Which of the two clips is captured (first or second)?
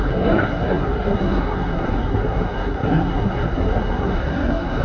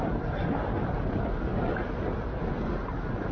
second